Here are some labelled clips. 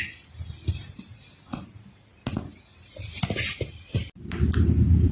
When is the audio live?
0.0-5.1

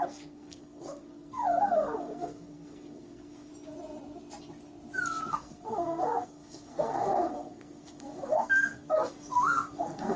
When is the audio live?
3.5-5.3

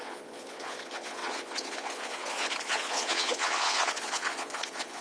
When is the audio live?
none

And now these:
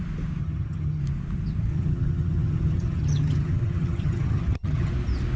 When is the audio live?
0.0-0.4; 1.0-1.7; 4.9-5.4

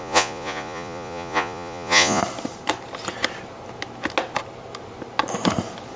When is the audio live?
2.2-6.0

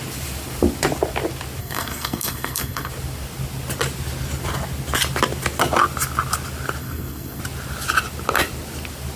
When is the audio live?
0.0-1.6; 2.9-6.8; 7.4-9.2

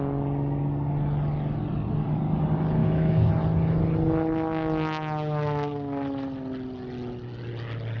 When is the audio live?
0.0-2.8; 3.3-8.0

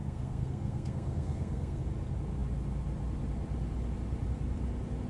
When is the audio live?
1.8-5.1